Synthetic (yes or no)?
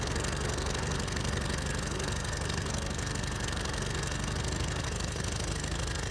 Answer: yes